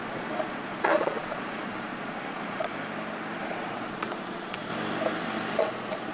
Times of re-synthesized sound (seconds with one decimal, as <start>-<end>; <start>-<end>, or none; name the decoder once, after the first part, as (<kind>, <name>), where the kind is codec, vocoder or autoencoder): 0.0-2.7 (vocoder, Vocos); 3.4-4.7; 5.6-6.1